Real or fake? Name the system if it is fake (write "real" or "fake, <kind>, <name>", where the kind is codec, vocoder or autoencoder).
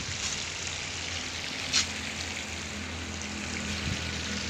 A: real